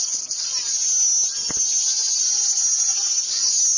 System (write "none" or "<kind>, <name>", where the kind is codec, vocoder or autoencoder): none